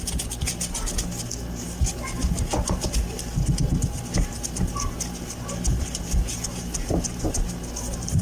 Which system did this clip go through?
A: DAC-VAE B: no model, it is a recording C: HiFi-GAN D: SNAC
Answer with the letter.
B